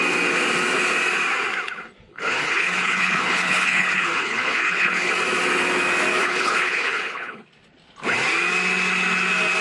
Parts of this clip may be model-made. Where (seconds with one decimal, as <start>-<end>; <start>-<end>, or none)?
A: 2.1-5.1; 6.2-7.5